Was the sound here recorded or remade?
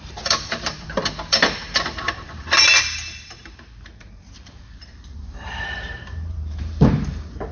remade